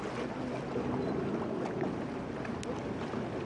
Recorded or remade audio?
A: recorded